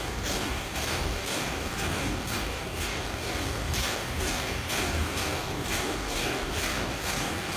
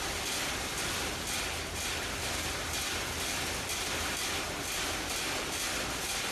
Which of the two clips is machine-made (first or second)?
first